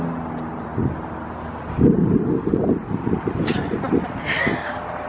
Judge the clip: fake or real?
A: real